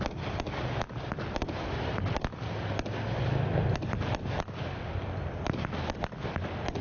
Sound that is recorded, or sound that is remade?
recorded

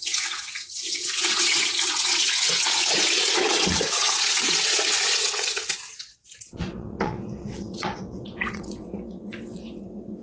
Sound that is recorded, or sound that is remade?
remade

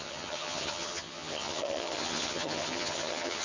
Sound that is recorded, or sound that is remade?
remade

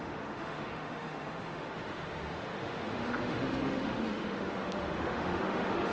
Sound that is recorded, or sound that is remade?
remade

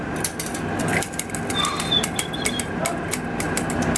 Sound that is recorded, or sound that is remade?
remade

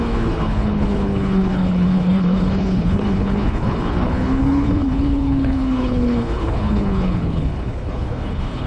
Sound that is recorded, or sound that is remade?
remade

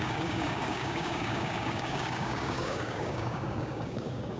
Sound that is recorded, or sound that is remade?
remade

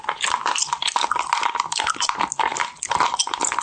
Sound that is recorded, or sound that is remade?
recorded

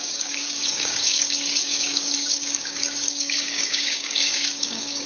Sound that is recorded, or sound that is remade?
remade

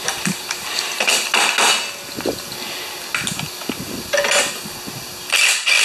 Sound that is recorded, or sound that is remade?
recorded